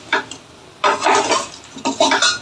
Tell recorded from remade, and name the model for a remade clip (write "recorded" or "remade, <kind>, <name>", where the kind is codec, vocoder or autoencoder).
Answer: recorded